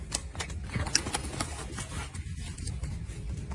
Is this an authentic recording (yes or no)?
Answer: yes